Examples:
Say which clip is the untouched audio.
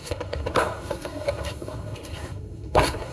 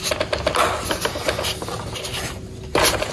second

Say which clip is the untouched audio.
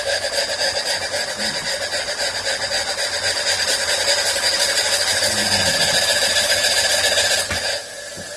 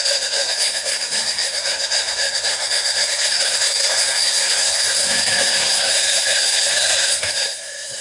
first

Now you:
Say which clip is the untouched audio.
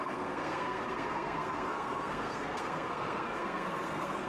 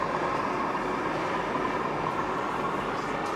second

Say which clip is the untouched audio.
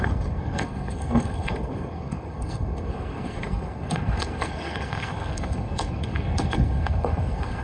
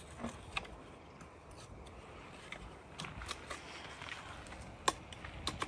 second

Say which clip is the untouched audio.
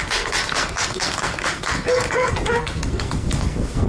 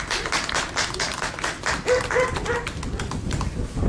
second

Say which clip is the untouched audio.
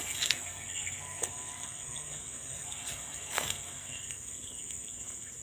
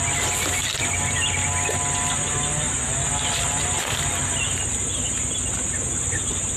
second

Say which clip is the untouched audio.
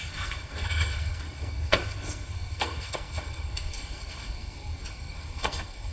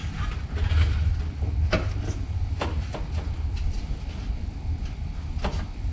second